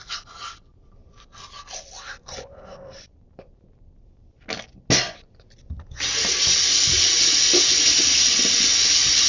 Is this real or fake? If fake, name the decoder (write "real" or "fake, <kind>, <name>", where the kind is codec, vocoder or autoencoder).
real